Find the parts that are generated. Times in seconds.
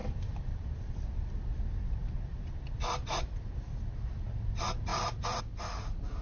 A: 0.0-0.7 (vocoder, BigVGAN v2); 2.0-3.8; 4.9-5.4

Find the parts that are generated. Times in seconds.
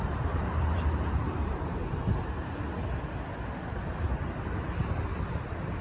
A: 0.0-1.8 (vocoder, BigVGAN v2); 5.3-5.8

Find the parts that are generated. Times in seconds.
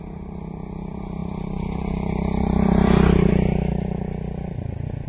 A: 1.2-3.3 (vocoder, BigVGAN v2)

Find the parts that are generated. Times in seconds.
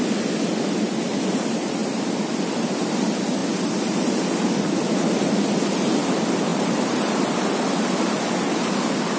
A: 6.5-7.1 (vocoder, BigVGAN v2)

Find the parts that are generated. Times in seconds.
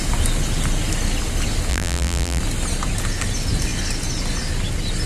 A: 1.7-2.4 (vocoder, BigVGAN v2)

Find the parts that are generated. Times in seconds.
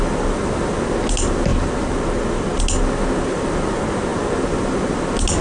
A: none